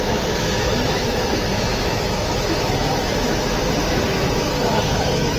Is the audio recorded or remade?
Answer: remade